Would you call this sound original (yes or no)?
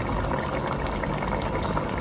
yes